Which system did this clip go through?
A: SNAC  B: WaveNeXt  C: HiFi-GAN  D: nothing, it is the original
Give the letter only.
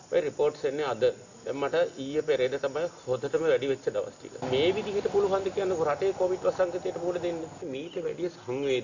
D